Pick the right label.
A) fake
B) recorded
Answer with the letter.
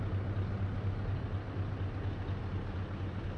B